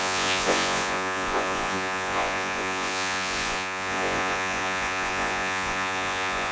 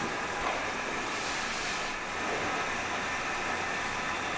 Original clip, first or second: second